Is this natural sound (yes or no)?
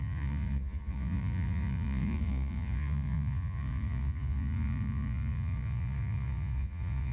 no